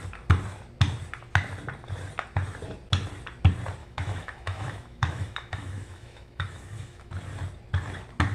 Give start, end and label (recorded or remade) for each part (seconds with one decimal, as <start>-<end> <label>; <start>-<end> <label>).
0.0-3.8 recorded; 3.8-7.1 remade; 7.1-8.3 recorded